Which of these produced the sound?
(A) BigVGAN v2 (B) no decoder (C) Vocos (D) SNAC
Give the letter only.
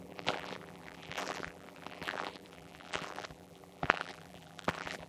A